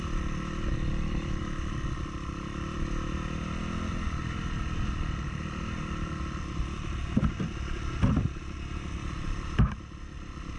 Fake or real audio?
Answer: fake